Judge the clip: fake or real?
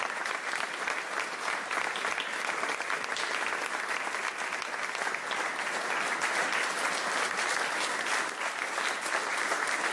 real